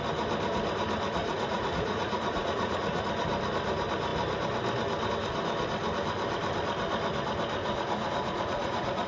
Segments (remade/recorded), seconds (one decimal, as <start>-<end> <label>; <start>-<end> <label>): 0.0-1.2 recorded; 1.2-3.0 remade; 3.0-7.6 recorded; 7.6-9.1 remade